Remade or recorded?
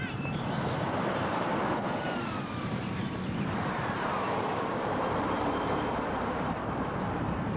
remade